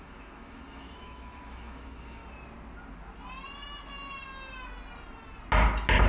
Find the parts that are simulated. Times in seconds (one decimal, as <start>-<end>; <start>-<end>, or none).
0.0-2.2